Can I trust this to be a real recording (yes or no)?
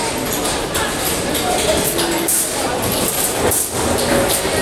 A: yes